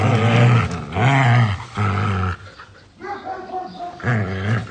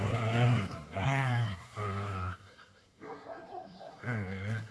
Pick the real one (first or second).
first